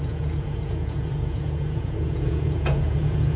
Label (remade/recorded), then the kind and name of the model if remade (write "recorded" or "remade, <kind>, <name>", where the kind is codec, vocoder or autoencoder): remade, vocoder, Vocos